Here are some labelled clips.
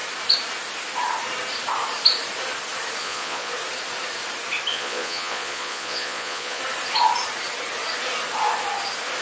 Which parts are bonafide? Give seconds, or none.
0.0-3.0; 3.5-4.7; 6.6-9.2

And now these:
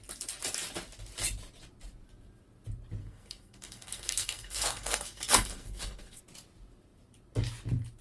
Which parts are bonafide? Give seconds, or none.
0.0-3.0; 6.2-8.0